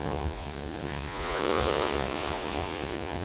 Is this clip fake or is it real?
fake